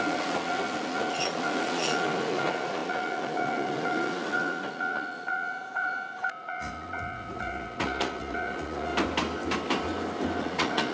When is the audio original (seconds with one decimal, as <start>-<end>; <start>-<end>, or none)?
8.9-10.4